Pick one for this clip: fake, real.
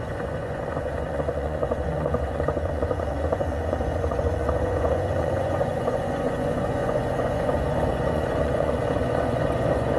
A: fake